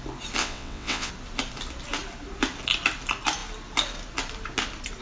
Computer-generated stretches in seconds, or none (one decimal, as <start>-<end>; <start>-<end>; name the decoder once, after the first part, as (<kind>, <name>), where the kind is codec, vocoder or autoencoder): 0.4-1.1 (vocoder, WaveNeXt)

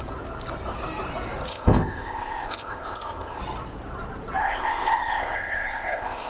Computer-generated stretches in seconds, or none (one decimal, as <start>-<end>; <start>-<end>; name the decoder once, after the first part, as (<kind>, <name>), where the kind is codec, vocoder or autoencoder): 1.5-3.4 (codec, ZipCodec); 4.4-6.3

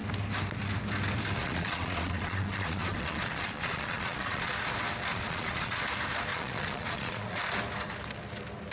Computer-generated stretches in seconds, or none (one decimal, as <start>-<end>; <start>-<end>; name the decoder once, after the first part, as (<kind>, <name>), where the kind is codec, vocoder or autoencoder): 1.4-4.5 (vocoder, Vocos); 5.1-5.8; 6.3-7.4

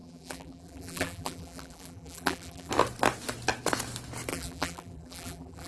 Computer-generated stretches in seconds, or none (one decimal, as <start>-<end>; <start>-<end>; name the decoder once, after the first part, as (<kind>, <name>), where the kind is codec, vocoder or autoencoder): 0.0-2.7 (vocoder, BigVGAN v2); 4.3-5.7

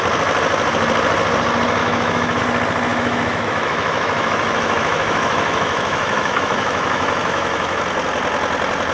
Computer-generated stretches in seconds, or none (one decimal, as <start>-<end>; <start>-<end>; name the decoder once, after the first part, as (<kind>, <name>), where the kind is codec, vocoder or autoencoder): 1.8-2.4 (autoencoder, DAC-VAE); 2.9-7.8

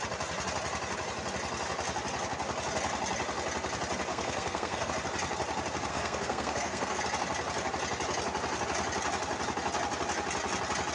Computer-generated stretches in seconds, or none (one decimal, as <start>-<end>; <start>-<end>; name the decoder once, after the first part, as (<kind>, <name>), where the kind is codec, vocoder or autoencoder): 4.1-4.9 (codec, SNAC); 5.9-7.0

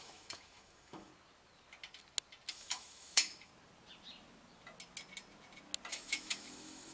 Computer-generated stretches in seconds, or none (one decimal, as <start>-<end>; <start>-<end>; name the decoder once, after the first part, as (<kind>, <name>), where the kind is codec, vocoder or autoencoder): 0.0-1.1 (autoencoder, DAC-VAE); 2.5-3.5; 5.9-6.9

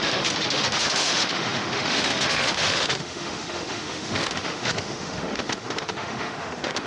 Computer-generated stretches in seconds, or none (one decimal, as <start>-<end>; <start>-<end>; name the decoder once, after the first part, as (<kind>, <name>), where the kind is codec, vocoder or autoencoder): 0.0-6.9 (autoencoder, DAC-VAE)